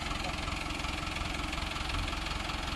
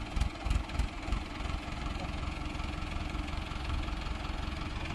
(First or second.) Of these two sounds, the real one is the first